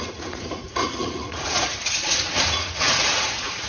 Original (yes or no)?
no